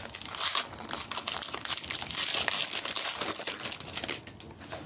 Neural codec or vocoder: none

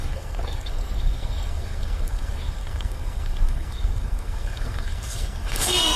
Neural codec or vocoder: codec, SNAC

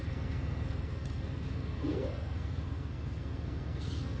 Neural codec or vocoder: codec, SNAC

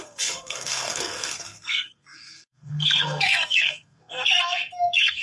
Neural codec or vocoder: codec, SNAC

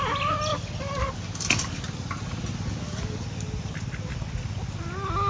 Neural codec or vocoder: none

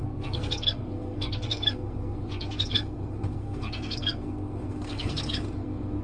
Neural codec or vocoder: codec, SNAC